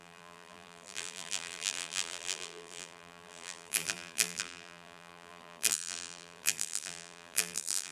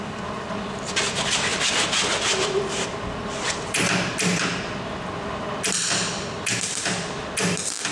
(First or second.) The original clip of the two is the second